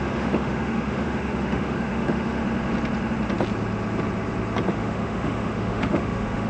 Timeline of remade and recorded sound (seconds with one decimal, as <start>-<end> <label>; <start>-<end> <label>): 0.0-2.4 remade; 2.4-4.7 recorded; 4.7-6.5 remade